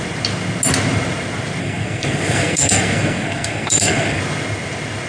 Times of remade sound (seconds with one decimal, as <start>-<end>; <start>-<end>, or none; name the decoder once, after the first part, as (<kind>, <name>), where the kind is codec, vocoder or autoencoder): 1.6-4.2 (codec, SNAC)